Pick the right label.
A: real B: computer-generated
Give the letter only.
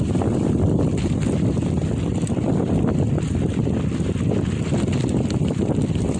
A